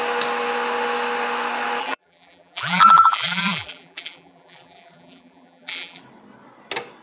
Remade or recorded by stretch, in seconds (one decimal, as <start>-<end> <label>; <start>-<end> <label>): 0.0-1.8 recorded; 1.8-6.0 remade; 6.0-7.0 recorded